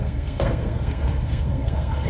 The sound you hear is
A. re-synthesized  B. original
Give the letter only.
A